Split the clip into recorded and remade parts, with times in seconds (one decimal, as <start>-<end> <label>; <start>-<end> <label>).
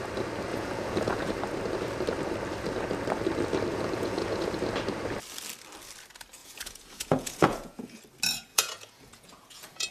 0.0-0.5 recorded; 0.5-1.3 remade; 1.3-3.7 recorded; 3.7-4.6 remade; 4.6-6.4 recorded; 6.4-8.0 remade; 8.0-8.5 recorded; 8.5-9.9 remade